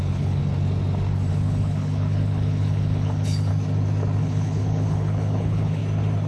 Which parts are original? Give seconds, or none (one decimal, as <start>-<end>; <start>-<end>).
0.4-1.3; 3.5-4.2; 5.8-6.3